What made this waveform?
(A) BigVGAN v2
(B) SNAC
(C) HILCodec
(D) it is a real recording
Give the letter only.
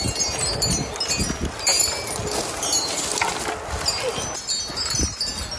D